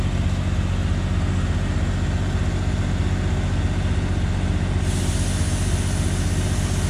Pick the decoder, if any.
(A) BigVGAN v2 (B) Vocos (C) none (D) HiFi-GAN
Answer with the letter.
C